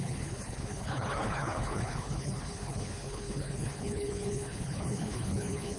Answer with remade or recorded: remade